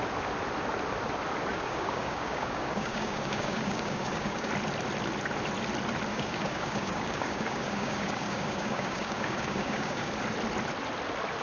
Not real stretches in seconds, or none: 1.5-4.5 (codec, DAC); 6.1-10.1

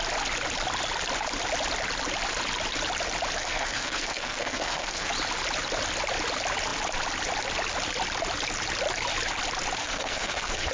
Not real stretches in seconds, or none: 3.4-5.1 (codec, SNAC); 9.8-10.7

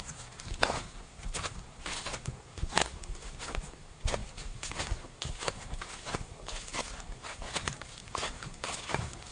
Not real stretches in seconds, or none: 0.0-9.3 (codec, SNAC)

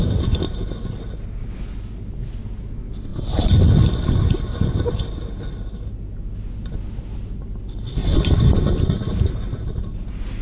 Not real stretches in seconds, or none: 3.1-4.3 (vocoder, BigVGAN v2); 8.0-8.8

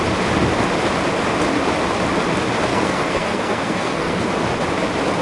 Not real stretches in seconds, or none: 2.7-4.3 (codec, SNAC)

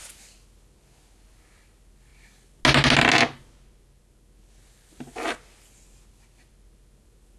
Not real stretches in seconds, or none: none

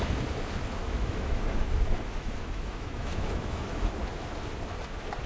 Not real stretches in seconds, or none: 0.8-4.0 (autoencoder, DAC-VAE)